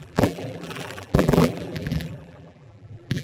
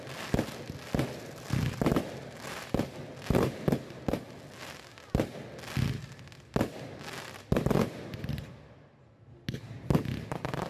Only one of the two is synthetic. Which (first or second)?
first